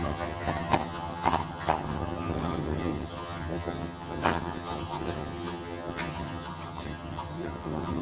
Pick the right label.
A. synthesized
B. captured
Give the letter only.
A